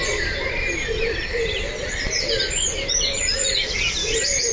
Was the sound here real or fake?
real